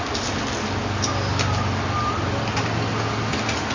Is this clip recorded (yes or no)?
yes